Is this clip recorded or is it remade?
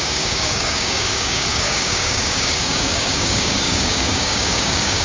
remade